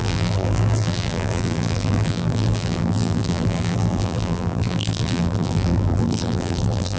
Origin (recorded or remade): remade